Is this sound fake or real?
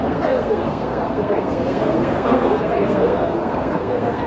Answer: fake